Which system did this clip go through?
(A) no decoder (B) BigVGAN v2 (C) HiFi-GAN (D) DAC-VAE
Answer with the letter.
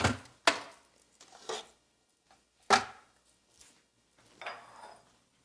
A